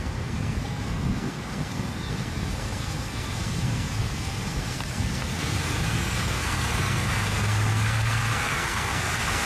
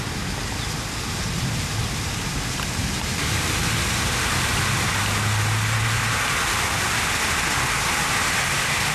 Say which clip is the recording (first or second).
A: second